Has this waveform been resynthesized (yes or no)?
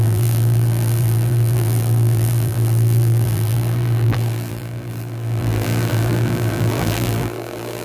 yes